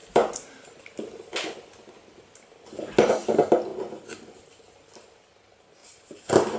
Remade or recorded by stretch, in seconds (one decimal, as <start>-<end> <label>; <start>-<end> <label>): 0.0-6.6 recorded